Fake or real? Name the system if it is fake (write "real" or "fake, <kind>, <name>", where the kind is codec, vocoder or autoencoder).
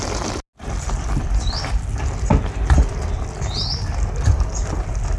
real